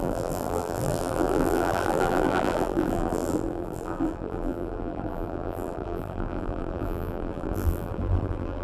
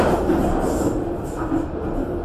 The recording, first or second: second